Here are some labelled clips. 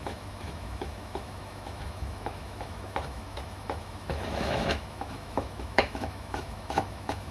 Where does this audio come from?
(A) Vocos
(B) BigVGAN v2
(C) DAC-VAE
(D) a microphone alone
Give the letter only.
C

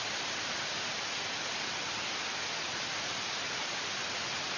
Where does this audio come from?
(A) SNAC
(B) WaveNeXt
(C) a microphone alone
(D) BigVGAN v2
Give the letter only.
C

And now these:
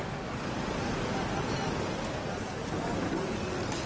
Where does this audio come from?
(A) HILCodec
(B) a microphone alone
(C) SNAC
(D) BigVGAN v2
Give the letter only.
B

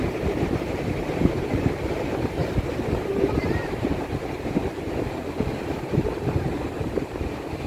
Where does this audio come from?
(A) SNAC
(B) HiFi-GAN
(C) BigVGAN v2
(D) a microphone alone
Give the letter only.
C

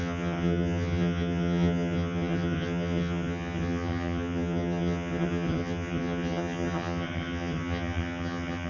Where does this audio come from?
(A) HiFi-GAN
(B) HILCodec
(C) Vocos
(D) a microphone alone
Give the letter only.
A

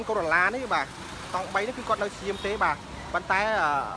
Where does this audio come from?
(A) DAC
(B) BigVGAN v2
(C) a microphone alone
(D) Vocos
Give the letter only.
C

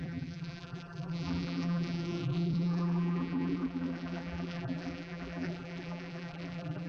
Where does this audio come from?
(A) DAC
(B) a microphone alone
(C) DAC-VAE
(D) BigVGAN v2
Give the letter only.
D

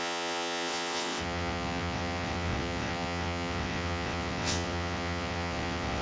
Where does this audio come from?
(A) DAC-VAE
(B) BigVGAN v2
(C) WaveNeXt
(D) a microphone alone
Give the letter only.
C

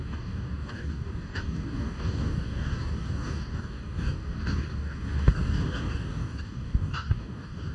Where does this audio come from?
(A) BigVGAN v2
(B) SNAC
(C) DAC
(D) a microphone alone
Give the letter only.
C